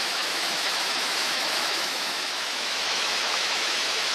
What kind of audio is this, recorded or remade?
remade